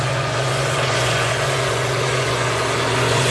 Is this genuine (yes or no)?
no